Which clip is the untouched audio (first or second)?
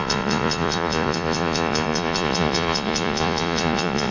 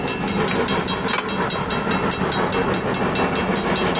second